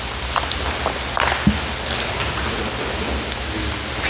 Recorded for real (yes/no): yes